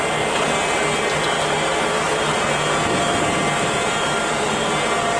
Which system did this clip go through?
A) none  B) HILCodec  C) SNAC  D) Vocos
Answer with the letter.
A